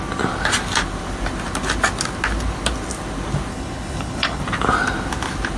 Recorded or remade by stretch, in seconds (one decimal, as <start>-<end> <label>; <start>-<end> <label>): 0.0-3.5 recorded; 3.5-4.4 remade; 4.4-5.6 recorded